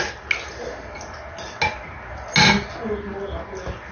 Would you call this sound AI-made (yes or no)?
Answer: no